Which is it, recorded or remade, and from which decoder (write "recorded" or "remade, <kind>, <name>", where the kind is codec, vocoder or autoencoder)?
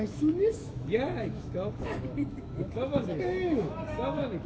remade, autoencoder, DAC-VAE